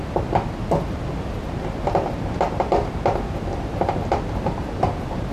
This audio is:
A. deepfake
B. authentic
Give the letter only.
A